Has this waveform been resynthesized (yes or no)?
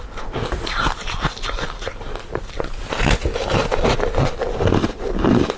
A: no